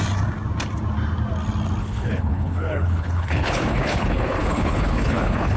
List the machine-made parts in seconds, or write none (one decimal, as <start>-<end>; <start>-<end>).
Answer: 1.8-5.6